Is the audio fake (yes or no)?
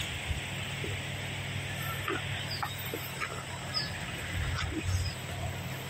no